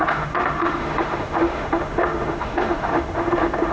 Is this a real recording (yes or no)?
no